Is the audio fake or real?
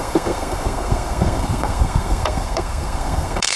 fake